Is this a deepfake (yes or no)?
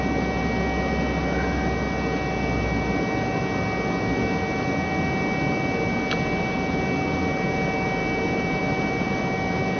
no